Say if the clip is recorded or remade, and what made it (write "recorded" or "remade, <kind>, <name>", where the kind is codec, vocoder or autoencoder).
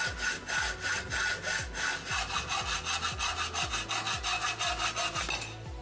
recorded